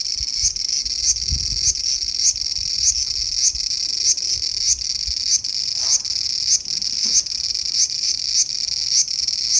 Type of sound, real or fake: real